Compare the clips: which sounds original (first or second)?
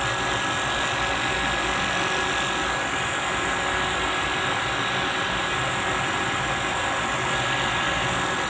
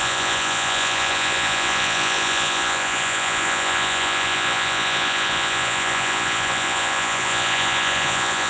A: first